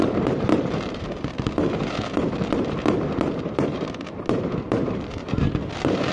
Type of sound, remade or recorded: remade